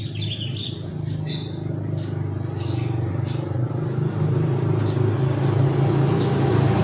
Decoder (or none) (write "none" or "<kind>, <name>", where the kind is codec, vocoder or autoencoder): none